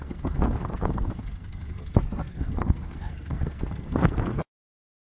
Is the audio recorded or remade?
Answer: remade